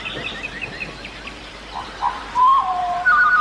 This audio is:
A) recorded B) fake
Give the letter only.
B